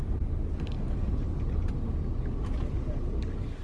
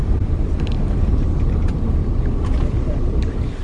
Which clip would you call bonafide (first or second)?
first